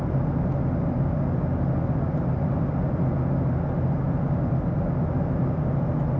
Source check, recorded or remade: recorded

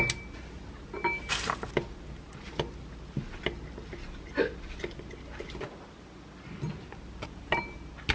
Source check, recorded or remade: recorded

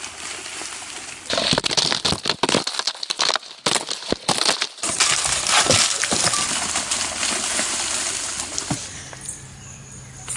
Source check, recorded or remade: remade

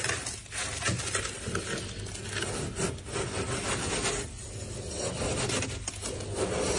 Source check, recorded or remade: recorded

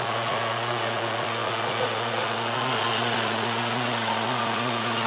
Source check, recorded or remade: remade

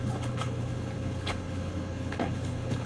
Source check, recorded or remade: remade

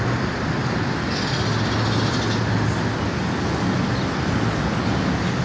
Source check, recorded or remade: recorded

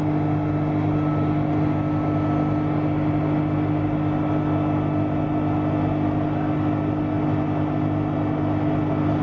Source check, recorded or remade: recorded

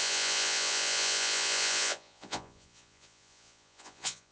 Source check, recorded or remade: remade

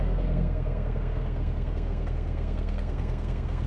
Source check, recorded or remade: remade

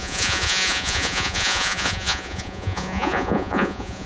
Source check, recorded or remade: remade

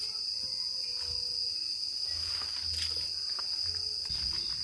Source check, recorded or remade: recorded